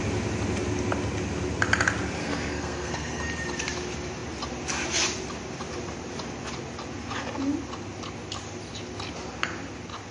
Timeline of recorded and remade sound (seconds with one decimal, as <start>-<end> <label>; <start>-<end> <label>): 0.0-2.2 recorded; 2.2-3.2 remade; 3.2-10.1 recorded